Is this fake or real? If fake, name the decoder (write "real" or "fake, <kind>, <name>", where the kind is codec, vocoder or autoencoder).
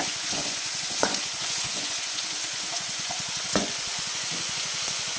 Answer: fake, vocoder, Vocos